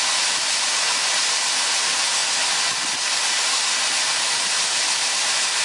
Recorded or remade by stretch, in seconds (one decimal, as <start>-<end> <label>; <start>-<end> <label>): 0.0-5.6 recorded